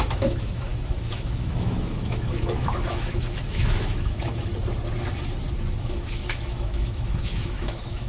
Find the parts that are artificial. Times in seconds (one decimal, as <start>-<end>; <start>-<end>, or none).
0.0-4.5; 5.8-8.1